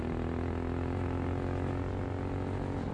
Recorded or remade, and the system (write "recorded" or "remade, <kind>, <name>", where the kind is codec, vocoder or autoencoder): recorded